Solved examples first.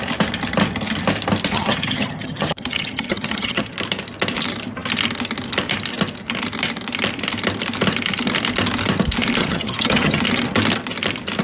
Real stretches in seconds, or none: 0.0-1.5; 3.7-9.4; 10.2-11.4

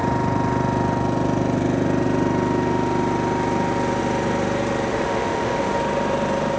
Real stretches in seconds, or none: 0.0-4.9; 5.8-6.6